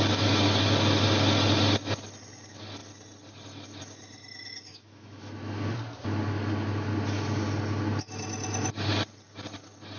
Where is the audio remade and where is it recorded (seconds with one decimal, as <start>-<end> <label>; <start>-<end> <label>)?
0.0-4.7 recorded; 4.7-5.6 remade; 5.6-10.0 recorded